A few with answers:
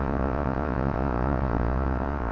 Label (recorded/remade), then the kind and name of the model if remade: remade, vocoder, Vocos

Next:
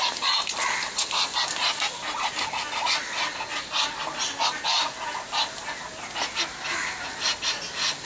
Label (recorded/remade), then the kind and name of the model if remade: recorded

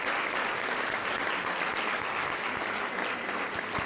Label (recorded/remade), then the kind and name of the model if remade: recorded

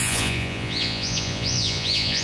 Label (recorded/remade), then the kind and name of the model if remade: remade, vocoder, Vocos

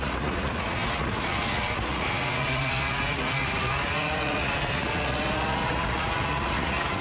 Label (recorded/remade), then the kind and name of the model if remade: remade, vocoder, Vocos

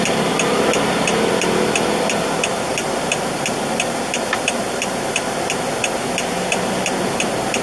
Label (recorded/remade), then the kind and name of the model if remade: recorded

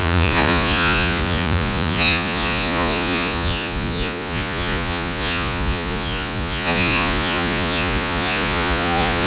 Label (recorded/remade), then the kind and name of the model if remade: remade, vocoder, Vocos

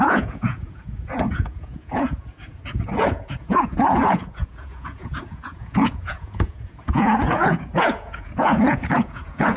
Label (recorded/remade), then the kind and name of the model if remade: remade, vocoder, Vocos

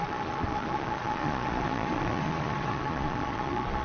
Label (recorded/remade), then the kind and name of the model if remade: remade, vocoder, Vocos